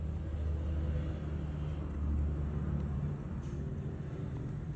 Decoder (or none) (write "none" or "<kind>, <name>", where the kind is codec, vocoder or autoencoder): none